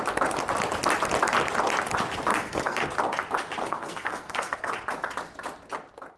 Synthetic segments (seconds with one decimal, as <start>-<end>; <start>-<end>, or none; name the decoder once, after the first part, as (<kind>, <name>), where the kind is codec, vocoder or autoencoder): 2.3-2.9 (codec, SNAC); 3.6-4.7